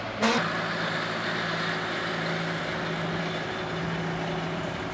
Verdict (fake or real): real